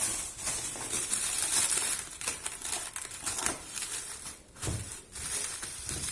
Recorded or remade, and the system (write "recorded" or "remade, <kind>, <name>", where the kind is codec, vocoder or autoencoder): remade, vocoder, BigVGAN v2